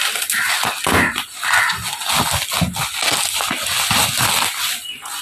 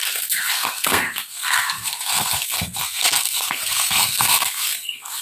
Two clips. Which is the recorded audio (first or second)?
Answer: first